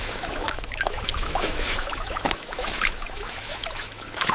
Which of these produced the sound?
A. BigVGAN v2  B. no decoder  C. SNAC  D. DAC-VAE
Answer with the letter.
D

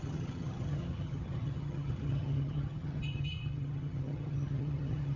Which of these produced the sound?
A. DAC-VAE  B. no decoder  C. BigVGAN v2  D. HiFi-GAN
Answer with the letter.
D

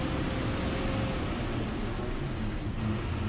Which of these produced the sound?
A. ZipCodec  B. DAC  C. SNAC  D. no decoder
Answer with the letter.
D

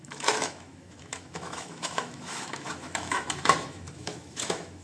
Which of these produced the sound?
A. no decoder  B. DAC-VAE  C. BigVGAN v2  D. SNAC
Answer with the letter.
B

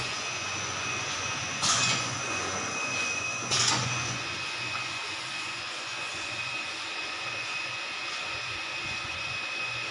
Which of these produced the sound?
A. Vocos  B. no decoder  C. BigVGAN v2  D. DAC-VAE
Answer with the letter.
A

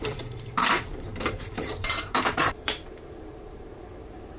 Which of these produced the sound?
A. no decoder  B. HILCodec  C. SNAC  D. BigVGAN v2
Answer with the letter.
D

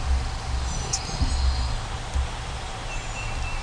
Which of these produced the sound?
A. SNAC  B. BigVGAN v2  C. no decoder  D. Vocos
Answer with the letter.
C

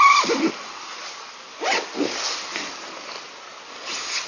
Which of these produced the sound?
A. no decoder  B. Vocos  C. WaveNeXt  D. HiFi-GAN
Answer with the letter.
A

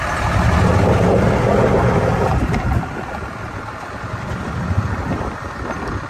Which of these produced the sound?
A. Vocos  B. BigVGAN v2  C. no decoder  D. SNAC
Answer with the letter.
C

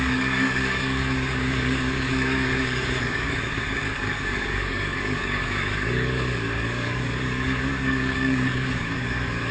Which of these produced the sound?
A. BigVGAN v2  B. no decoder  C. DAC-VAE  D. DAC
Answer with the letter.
D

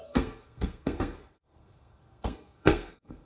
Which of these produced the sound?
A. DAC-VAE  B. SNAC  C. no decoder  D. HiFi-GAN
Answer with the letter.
B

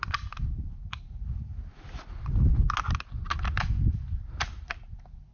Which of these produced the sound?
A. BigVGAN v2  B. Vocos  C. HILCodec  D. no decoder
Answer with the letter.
D